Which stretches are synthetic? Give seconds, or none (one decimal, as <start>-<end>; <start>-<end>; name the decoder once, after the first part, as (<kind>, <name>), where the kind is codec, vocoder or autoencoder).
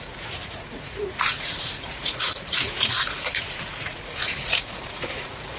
0.0-5.6 (vocoder, Vocos)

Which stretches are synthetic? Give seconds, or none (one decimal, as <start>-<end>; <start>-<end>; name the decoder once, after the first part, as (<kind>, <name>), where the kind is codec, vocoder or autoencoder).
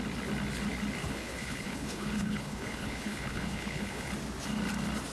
1.0-4.1 (codec, HILCodec)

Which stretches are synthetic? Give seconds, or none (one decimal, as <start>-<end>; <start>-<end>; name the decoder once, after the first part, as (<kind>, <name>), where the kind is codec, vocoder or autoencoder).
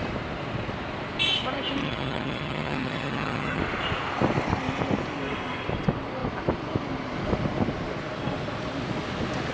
1.8-3.6 (vocoder, HiFi-GAN)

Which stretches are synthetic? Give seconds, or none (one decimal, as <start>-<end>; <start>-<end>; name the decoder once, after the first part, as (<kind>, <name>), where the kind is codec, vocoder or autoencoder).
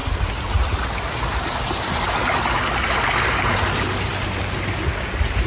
none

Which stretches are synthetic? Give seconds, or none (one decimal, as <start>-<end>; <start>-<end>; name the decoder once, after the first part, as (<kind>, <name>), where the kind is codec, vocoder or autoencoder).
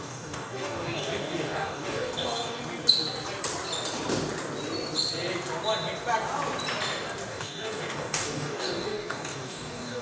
0.0-2.6 (codec, DAC); 7.3-10.0